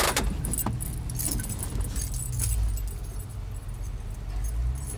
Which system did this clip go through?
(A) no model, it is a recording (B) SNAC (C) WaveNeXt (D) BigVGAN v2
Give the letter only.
A